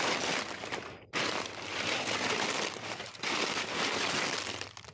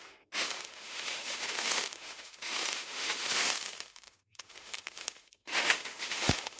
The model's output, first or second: second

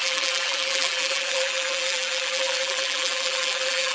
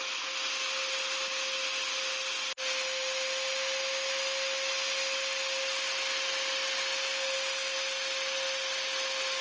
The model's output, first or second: first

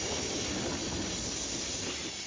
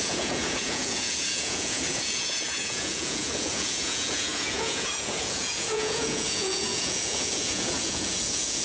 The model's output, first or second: second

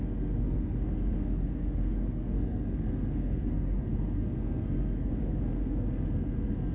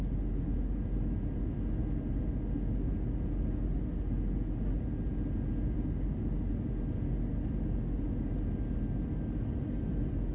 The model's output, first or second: first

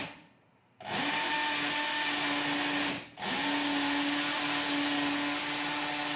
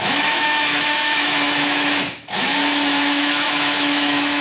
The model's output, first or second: second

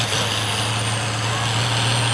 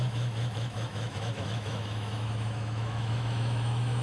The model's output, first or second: second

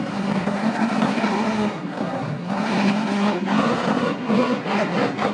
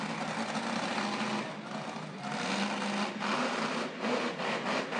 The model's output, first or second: first